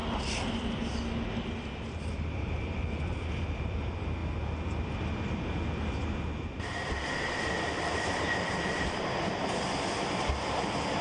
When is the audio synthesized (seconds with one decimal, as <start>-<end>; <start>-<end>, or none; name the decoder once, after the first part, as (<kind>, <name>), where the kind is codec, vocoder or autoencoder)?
2.0-4.2 (vocoder, BigVGAN v2); 7.9-11.0